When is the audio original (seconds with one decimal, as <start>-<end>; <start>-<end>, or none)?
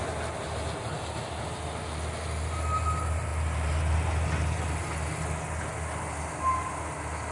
0.0-7.3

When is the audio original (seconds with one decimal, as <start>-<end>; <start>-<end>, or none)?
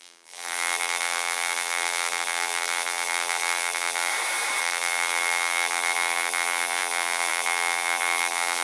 4.1-4.6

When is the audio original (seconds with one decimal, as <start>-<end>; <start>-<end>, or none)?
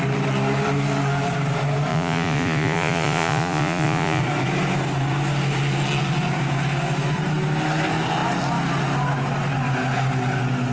0.0-1.9; 4.2-10.7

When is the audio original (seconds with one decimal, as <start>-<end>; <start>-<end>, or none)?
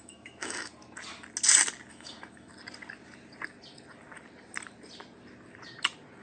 0.7-1.9; 2.5-6.2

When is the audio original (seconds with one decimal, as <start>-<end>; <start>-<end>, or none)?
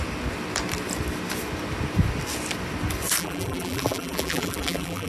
0.0-3.2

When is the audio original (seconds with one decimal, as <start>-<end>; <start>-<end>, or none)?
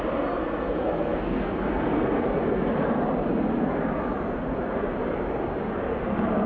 0.0-0.8; 1.5-6.5